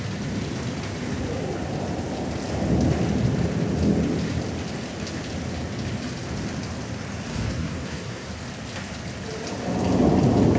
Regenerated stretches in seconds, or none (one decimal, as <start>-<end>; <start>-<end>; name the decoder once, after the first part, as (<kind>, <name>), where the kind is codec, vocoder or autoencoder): 7.3-8.3 (codec, SNAC)